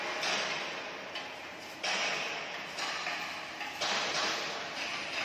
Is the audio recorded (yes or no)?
yes